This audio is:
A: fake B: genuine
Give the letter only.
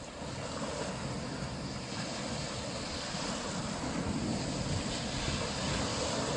B